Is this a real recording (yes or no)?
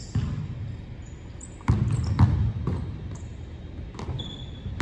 yes